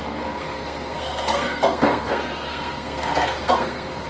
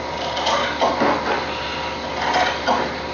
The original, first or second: second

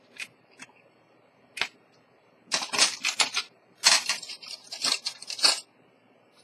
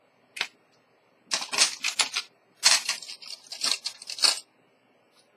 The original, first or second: second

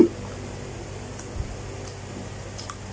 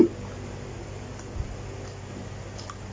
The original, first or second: second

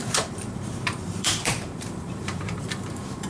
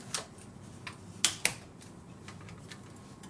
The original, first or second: second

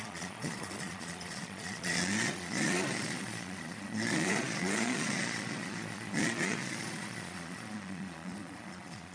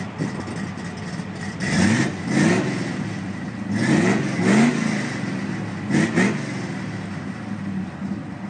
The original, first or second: second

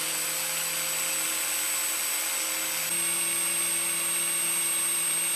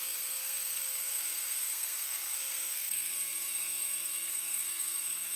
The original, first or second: first